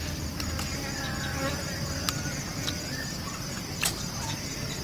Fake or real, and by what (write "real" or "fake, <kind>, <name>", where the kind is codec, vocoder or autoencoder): real